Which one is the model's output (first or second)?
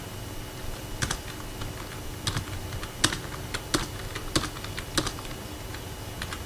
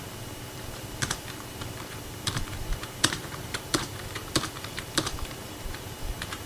second